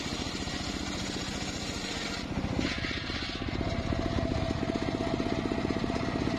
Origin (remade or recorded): recorded